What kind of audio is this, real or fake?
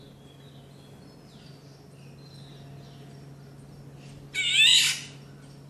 real